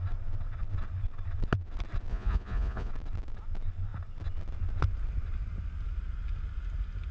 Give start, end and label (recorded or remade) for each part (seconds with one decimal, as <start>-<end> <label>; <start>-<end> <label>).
0.0-2.1 recorded; 2.1-2.9 remade; 2.9-7.1 recorded